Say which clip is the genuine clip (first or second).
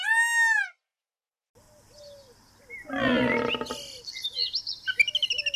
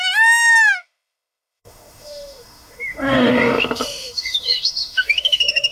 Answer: first